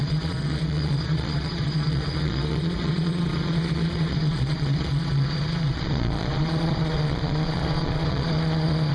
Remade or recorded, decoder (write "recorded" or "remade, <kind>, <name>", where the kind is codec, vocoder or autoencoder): remade, vocoder, Vocos